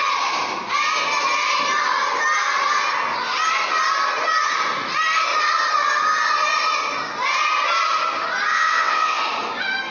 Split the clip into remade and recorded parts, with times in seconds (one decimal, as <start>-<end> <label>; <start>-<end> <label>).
0.0-8.5 recorded; 8.5-9.2 remade; 9.2-9.9 recorded